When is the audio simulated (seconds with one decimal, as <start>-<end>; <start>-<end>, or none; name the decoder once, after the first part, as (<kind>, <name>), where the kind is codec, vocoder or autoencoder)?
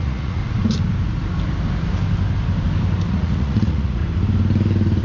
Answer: 0.0-0.4 (vocoder, Vocos); 3.1-4.0